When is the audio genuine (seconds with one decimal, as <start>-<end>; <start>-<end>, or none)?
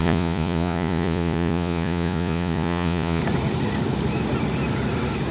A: 3.2-5.3